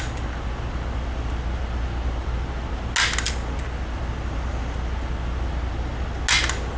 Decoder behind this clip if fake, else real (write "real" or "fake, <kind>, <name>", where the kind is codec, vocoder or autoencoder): real